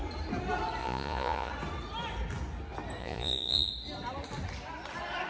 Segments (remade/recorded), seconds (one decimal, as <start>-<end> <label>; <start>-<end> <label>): 0.0-0.8 recorded; 0.8-1.5 remade; 1.5-3.0 recorded; 3.0-3.7 remade; 3.7-5.3 recorded